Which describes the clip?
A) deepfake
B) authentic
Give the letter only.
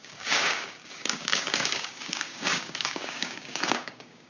A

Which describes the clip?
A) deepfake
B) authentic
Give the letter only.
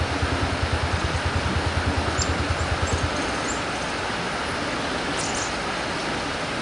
B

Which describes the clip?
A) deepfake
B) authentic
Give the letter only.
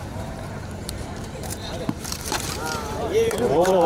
A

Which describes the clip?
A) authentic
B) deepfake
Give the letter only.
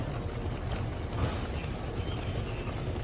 A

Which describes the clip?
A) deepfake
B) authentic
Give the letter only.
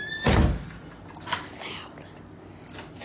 B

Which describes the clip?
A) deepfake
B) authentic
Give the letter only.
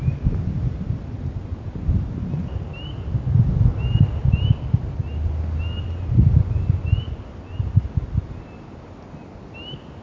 B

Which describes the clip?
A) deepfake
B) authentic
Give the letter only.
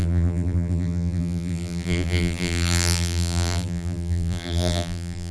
A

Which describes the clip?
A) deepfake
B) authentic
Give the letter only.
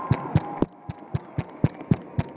B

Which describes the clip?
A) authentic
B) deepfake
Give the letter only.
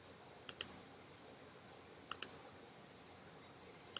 A